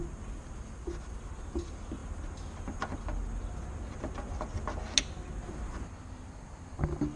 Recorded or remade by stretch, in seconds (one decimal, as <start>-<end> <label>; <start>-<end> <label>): 0.0-7.2 recorded